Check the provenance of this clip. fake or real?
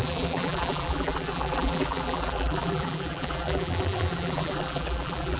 fake